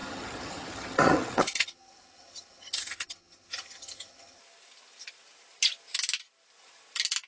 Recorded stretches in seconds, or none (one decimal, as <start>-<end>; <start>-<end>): 4.4-7.3